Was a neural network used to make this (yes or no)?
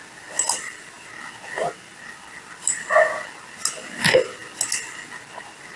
no